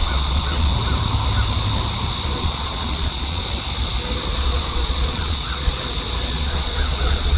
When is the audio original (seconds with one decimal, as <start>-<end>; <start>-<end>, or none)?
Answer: 0.7-2.4; 3.4-4.4; 5.8-6.3